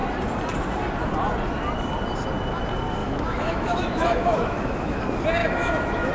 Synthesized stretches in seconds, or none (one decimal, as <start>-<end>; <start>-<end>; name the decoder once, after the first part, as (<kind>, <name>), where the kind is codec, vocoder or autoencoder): 3.0-5.0 (autoencoder, DAC-VAE); 5.4-6.1